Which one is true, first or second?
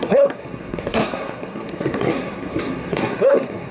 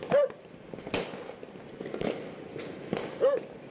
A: second